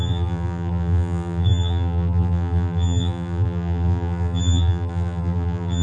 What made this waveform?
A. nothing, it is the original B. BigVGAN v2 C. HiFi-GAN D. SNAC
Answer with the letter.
B